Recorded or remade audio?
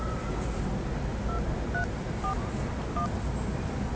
recorded